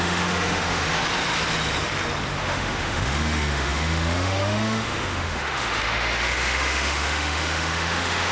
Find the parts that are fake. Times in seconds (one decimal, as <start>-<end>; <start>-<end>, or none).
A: 0.0-1.0; 2.4-8.3